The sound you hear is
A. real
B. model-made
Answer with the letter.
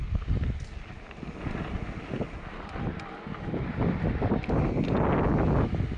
A